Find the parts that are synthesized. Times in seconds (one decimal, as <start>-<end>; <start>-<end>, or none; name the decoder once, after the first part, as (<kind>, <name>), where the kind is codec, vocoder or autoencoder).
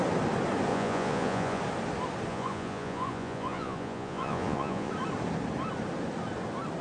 0.7-1.6 (vocoder, Vocos); 2.3-4.9